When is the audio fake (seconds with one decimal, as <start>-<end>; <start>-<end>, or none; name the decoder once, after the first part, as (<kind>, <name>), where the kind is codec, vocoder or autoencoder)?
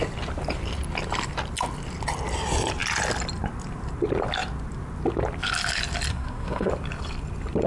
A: 6.1-6.7 (codec, SNAC)